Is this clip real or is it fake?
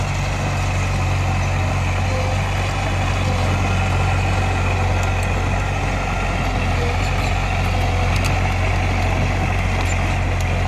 real